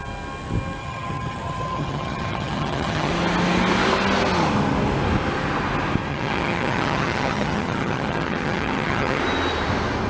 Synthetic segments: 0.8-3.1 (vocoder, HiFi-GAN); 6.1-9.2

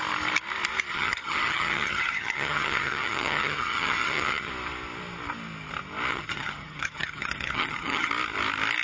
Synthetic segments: 0.9-4.5 (vocoder, HiFi-GAN); 6.1-8.1

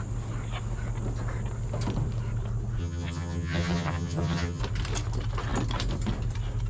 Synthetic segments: 2.8-4.6 (vocoder, HiFi-GAN)

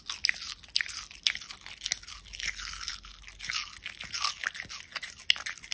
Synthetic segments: none

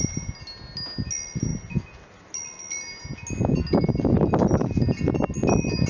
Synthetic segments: none

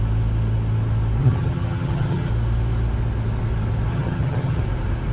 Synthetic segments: 1.2-2.3 (vocoder, HiFi-GAN); 3.9-4.6

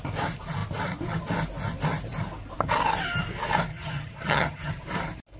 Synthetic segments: 3.7-4.7 (vocoder, HiFi-GAN)

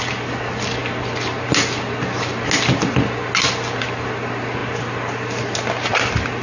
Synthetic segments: none